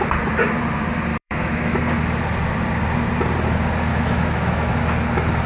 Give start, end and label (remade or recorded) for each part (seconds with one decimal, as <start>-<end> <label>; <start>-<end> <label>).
0.0-1.1 recorded; 1.1-1.8 remade; 1.8-3.9 recorded; 3.9-4.7 remade; 4.7-5.5 recorded